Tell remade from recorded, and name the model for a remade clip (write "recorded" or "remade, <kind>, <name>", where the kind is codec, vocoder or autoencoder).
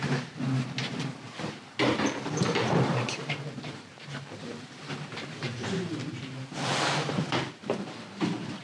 remade, vocoder, BigVGAN v2